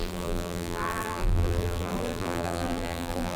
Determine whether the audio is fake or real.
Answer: fake